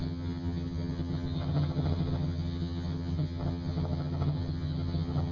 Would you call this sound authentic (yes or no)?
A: no